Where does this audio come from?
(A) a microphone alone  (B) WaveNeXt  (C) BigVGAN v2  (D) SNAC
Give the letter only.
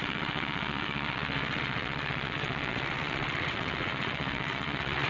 B